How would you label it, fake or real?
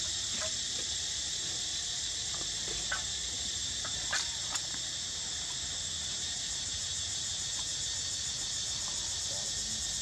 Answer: real